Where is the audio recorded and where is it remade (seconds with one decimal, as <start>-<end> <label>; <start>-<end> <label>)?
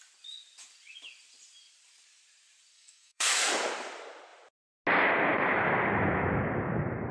0.0-2.7 recorded; 2.7-3.5 remade; 3.5-7.1 recorded